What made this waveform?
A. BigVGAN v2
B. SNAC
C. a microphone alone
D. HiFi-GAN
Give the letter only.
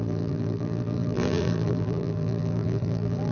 A